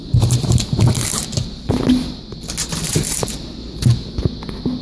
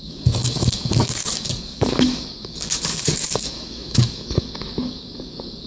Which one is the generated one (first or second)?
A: second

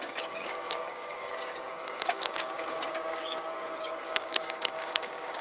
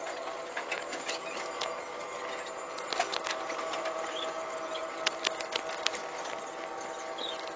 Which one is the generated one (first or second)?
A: first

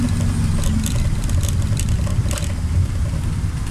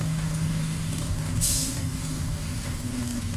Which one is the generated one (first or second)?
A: second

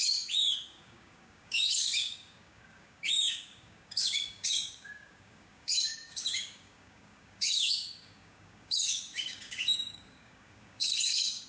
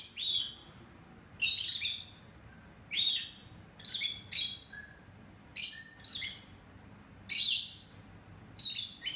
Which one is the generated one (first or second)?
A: first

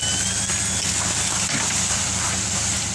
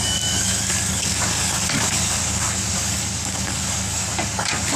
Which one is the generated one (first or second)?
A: second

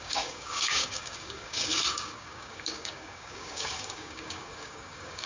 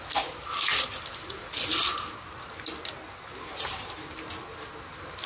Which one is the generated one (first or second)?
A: first